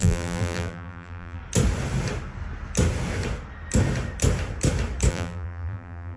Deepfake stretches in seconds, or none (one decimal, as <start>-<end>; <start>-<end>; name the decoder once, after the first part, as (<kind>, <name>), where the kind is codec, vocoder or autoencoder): 0.0-1.4 (vocoder, BigVGAN v2); 5.1-6.2